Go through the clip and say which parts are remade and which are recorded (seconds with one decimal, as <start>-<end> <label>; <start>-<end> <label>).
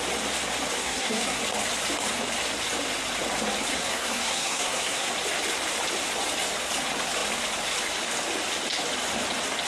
0.0-0.8 recorded; 0.8-1.4 remade; 1.4-3.7 recorded; 3.7-5.1 remade; 5.1-9.7 recorded